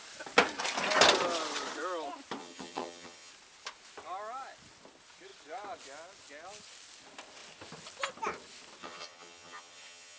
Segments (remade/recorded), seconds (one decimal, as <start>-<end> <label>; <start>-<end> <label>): 0.0-2.4 recorded; 2.4-3.3 remade; 3.3-8.8 recorded; 8.8-10.2 remade